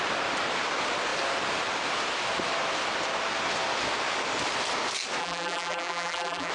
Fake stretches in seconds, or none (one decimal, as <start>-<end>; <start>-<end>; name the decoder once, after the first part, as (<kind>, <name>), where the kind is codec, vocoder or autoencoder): 5.2-6.5 (vocoder, BigVGAN v2)